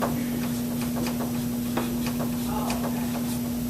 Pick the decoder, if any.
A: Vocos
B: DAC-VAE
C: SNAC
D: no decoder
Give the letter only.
D